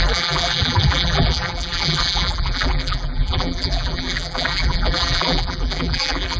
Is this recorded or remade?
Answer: remade